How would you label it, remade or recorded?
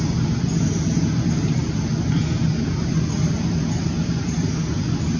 recorded